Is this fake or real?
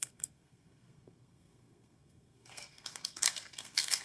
fake